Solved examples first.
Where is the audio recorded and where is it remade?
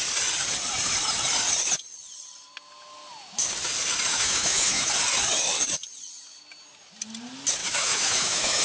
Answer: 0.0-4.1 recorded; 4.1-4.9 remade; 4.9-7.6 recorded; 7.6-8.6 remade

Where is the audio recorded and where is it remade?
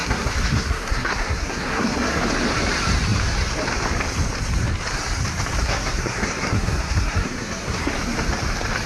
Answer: 0.0-2.3 remade; 2.3-5.6 recorded; 5.6-7.9 remade; 7.9-8.9 recorded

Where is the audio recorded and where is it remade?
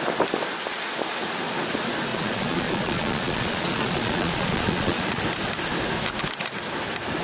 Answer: 0.0-2.1 recorded; 2.1-5.2 remade; 5.2-7.2 recorded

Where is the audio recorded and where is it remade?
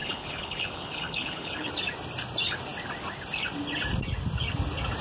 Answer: 0.0-1.7 remade; 1.7-5.0 recorded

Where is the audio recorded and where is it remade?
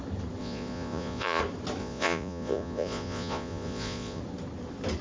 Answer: 0.0-0.4 recorded; 0.4-1.4 remade; 1.4-1.8 recorded; 1.8-4.2 remade; 4.2-5.0 recorded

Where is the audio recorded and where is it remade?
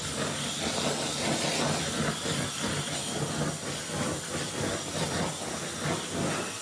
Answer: 0.0-6.6 recorded